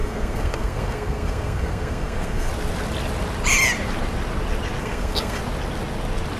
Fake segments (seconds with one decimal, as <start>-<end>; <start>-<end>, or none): 0.0-2.5; 4.8-5.4